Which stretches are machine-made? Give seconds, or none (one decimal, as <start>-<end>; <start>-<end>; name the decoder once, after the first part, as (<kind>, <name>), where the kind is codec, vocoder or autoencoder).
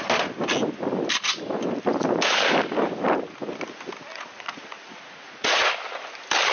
4.1-5.7 (vocoder, Vocos)